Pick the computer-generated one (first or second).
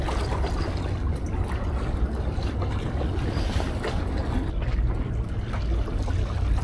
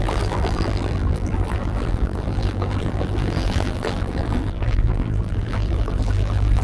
second